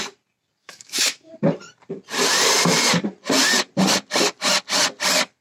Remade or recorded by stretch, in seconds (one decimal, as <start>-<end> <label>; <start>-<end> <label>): 0.0-0.6 recorded; 0.6-1.3 remade; 1.3-5.4 recorded